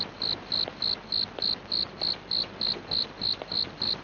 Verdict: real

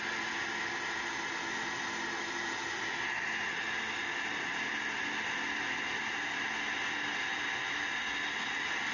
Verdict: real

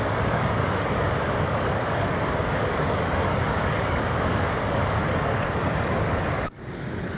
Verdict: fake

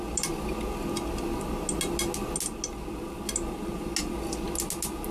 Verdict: real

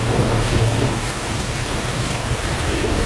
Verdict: fake